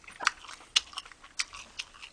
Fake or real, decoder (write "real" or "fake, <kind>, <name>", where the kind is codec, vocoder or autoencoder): real